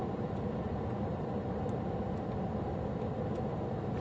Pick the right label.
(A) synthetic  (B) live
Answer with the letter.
A